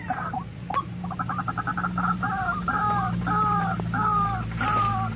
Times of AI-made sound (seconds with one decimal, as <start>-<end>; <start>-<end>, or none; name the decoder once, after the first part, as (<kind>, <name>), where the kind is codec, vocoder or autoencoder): none